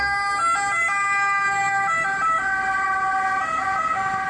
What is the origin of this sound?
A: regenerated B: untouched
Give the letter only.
B